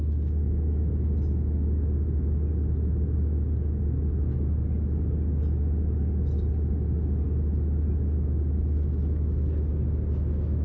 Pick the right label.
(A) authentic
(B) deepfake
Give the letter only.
A